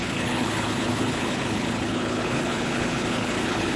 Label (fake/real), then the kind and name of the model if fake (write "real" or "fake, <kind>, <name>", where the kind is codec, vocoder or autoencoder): fake, codec, HILCodec